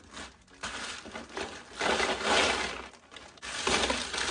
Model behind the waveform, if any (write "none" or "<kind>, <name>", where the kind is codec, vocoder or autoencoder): none